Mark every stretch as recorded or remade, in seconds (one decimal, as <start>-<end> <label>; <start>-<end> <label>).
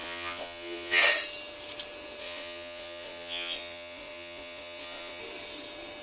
0.0-1.0 remade; 1.0-2.2 recorded; 2.2-5.2 remade; 5.2-6.0 recorded